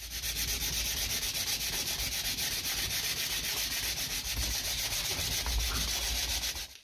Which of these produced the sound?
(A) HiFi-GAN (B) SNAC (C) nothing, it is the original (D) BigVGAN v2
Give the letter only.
C